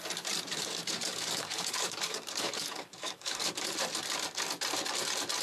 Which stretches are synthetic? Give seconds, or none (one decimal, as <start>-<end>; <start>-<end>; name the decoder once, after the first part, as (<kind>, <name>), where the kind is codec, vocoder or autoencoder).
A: 0.5-3.7 (codec, DAC)